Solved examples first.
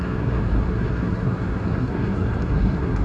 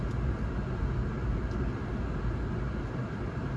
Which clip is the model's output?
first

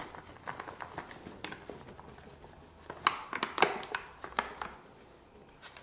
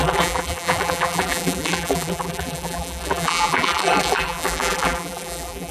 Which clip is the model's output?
second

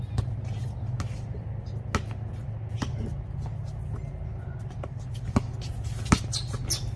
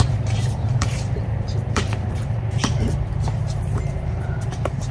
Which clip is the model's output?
second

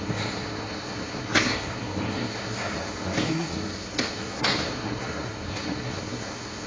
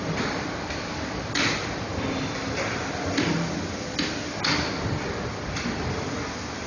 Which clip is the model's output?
first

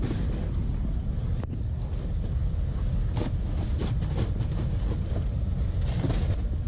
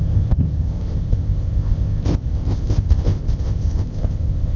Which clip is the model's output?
second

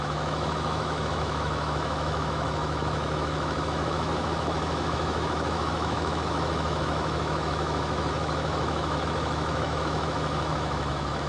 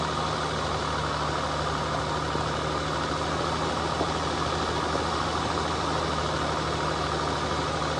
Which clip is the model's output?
first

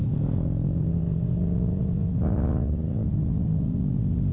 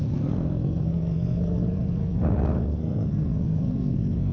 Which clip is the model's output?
second